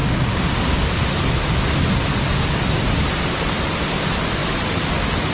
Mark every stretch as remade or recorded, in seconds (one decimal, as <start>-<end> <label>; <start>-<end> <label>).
0.0-5.3 recorded